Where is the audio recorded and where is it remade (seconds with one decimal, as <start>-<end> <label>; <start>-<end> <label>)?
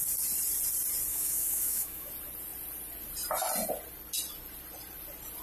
0.0-1.1 recorded; 1.1-2.1 remade; 2.1-5.4 recorded